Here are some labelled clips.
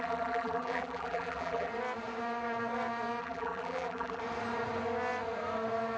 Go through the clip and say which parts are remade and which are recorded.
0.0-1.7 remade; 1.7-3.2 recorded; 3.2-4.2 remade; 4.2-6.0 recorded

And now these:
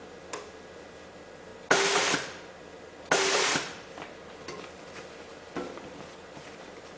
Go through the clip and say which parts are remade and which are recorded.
0.0-7.0 recorded

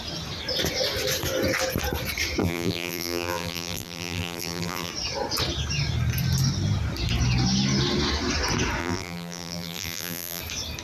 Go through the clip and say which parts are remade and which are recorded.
0.0-2.4 recorded; 2.4-4.9 remade; 4.9-8.8 recorded; 8.8-10.4 remade; 10.4-10.8 recorded

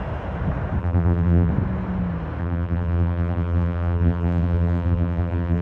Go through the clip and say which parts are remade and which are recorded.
0.0-0.8 recorded; 0.8-1.5 remade; 1.5-2.4 recorded; 2.4-5.6 remade

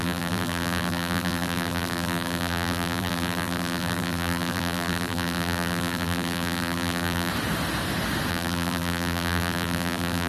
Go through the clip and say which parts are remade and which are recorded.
0.0-7.3 remade; 7.3-8.3 recorded; 8.3-10.3 remade

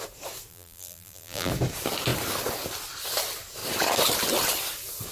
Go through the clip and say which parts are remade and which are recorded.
0.0-0.5 recorded; 0.5-1.5 remade; 1.5-5.1 recorded

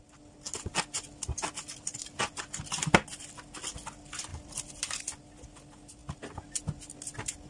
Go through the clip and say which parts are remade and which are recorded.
0.0-4.3 recorded; 4.3-5.0 remade; 5.0-7.5 recorded

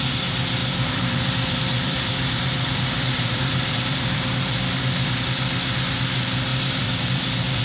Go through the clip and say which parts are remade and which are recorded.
0.0-0.6 recorded; 0.6-5.2 remade; 5.2-6.5 recorded; 6.5-7.6 remade